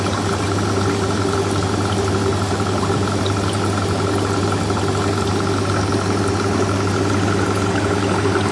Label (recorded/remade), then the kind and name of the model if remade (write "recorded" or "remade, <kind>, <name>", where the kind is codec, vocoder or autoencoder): recorded